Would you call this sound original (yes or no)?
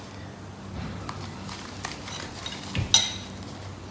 yes